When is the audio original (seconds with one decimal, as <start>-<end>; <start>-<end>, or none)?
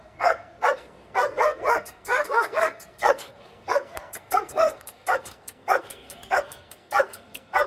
none